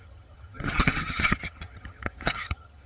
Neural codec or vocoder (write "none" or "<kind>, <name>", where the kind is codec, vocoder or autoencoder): vocoder, HiFi-GAN